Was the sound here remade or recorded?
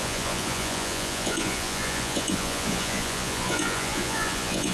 remade